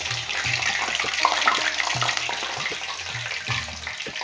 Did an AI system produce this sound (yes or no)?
no